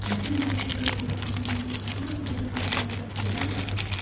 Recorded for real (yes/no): yes